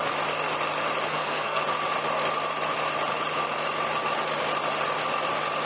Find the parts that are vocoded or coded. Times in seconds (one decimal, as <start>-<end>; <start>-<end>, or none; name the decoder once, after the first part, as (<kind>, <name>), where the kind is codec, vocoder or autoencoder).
1.1-1.6 (codec, SNAC)